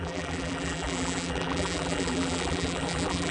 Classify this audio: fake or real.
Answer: fake